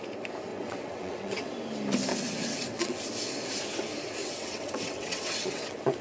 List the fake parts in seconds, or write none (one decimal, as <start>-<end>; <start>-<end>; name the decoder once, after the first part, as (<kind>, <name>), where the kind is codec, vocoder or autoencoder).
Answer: 0.5-1.5 (vocoder, WaveNeXt); 2.1-3.0; 4.2-6.0